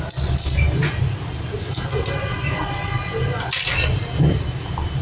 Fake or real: real